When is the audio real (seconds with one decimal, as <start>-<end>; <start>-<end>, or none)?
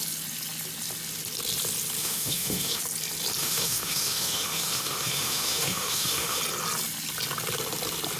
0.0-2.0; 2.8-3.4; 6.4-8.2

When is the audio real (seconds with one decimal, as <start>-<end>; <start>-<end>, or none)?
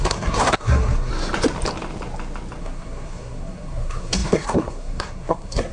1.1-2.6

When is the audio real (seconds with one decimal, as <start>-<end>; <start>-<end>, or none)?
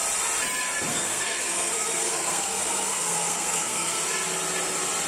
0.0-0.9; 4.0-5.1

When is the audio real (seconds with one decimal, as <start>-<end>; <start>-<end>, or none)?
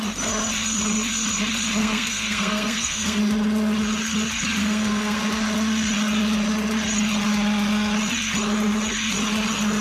0.0-1.8; 3.2-4.6; 5.2-9.8